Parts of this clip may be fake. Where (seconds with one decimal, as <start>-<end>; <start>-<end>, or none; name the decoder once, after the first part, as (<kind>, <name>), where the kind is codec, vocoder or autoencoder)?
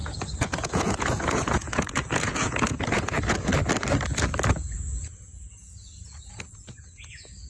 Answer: 0.0-3.5 (vocoder, Vocos); 4.5-7.5